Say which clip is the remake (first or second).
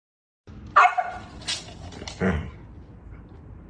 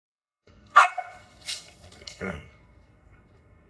second